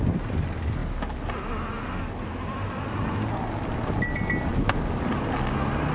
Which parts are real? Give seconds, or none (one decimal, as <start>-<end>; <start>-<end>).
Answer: 0.0-5.9